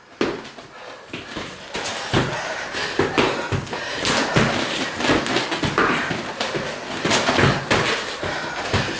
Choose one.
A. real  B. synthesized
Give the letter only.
A